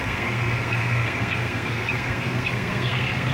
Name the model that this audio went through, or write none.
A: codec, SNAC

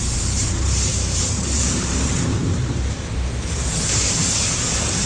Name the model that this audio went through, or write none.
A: vocoder, BigVGAN v2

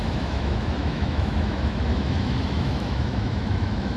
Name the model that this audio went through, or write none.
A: autoencoder, DAC-VAE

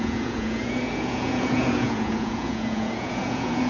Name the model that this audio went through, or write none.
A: vocoder, Vocos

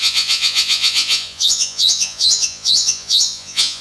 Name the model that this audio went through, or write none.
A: vocoder, Vocos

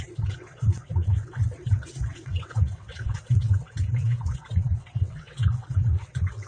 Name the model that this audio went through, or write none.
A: vocoder, WaveNeXt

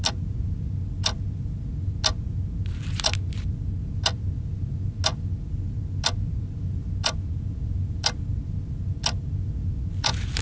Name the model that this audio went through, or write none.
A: none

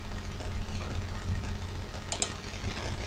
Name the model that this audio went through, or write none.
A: none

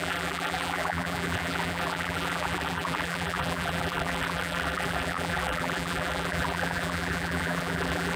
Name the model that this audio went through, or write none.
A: vocoder, BigVGAN v2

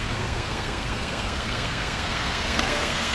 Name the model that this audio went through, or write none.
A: codec, SNAC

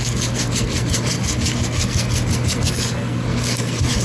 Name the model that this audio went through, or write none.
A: codec, SNAC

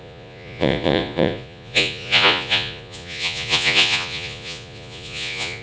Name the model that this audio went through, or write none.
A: vocoder, Vocos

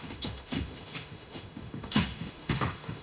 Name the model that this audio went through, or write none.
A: autoencoder, DAC-VAE